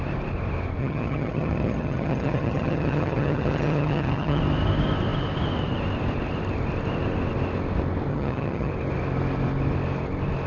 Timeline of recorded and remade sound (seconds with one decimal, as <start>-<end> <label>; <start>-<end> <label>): 0.0-0.8 recorded; 0.8-4.4 remade; 4.4-8.1 recorded; 8.1-8.7 remade; 8.7-10.5 recorded